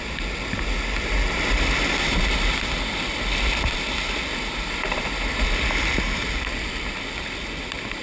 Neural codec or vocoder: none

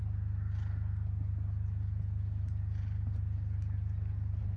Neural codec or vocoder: none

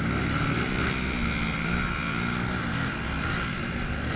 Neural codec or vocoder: none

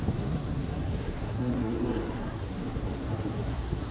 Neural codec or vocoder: codec, SNAC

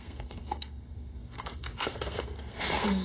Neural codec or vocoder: codec, SNAC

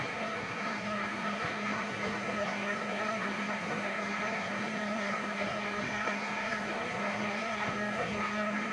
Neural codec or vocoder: codec, SNAC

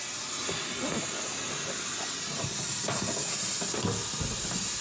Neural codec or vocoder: none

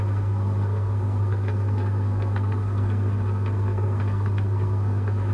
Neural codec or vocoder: codec, SNAC